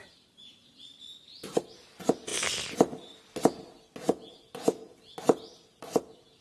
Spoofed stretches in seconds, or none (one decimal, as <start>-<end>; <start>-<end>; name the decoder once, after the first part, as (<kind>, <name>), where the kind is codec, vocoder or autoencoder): none